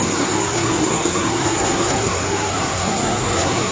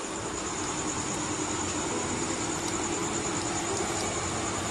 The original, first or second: second